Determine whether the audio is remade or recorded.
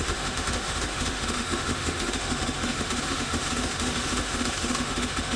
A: remade